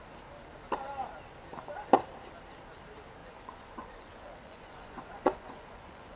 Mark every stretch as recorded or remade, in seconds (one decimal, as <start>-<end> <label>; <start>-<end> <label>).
0.0-3.2 recorded; 3.2-6.2 remade